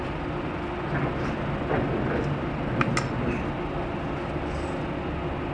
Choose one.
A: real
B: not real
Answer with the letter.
A